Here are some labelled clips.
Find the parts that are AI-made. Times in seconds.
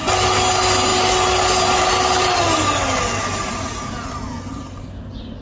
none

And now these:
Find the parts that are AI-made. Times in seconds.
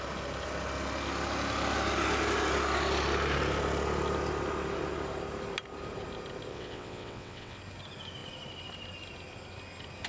6.5-7.6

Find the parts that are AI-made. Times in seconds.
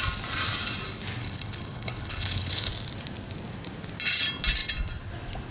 1.2-2.7